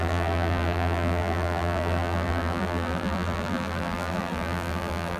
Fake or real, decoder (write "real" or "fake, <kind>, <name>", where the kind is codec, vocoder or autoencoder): fake, vocoder, BigVGAN v2